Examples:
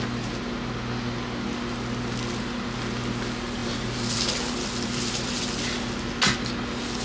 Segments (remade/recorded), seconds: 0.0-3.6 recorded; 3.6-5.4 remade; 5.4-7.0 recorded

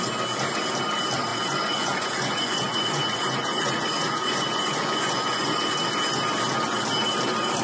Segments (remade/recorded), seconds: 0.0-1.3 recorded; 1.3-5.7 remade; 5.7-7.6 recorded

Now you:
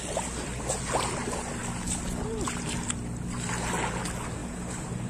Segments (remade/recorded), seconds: 0.0-4.4 recorded; 4.4-5.1 remade